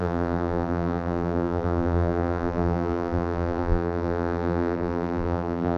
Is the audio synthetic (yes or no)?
yes